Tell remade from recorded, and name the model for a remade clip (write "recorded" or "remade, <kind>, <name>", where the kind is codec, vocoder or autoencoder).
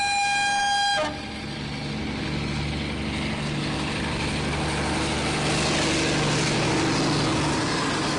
recorded